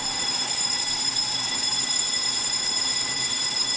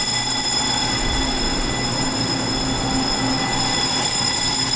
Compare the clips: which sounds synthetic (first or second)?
first